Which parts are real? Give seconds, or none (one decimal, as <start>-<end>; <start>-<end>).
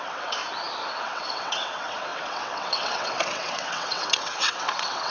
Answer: 0.4-1.0